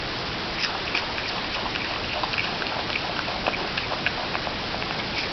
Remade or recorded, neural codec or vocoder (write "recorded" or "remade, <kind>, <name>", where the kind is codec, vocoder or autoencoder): recorded